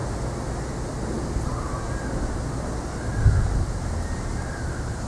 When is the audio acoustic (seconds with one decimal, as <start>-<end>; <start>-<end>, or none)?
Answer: 0.0-5.1